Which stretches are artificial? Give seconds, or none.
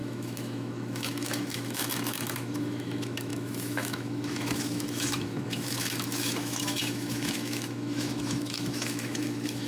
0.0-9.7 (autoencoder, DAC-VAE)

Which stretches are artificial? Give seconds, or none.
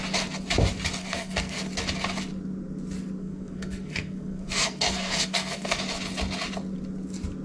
1.0-1.6 (codec, SNAC); 3.2-5.8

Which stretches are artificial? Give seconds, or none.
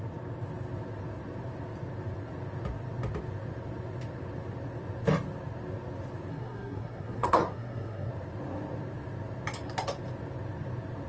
6.3-8.1 (codec, SNAC)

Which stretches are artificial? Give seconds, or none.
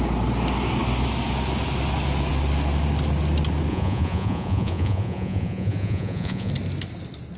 3.7-6.5 (vocoder, Vocos)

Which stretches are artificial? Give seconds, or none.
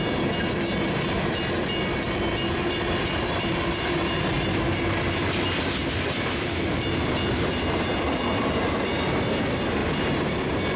9.8-10.4 (vocoder, BigVGAN v2)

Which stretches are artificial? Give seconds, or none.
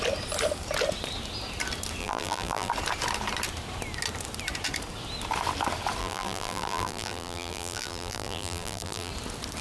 2.0-2.7 (vocoder, BigVGAN v2); 6.0-9.1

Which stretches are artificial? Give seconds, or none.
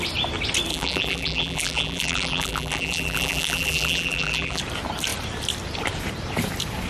0.7-4.6 (vocoder, BigVGAN v2)